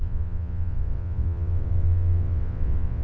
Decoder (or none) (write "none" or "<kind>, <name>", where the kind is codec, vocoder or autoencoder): vocoder, WaveNeXt